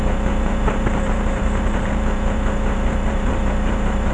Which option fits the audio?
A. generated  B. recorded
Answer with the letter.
A